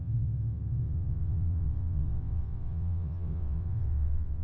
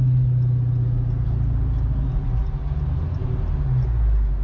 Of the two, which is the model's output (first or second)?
first